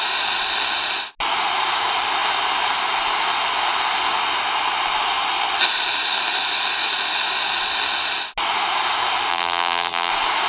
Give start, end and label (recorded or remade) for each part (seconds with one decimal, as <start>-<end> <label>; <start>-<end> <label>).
0.0-9.3 recorded; 9.3-10.1 remade; 10.1-10.5 recorded